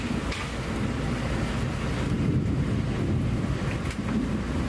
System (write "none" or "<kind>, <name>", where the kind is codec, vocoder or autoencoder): none